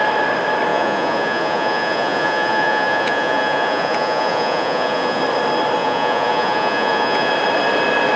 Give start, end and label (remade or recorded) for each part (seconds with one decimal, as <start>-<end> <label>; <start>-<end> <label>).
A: 0.0-0.7 recorded; 0.7-5.2 remade; 5.2-5.8 recorded; 5.8-7.3 remade; 7.3-8.2 recorded